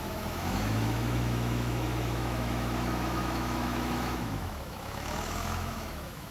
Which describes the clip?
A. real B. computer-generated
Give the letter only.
B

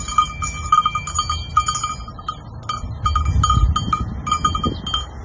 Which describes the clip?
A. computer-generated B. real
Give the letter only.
B